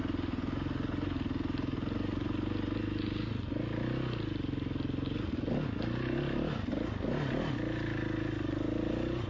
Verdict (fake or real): real